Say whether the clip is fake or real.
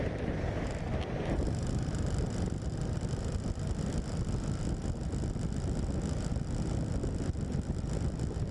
real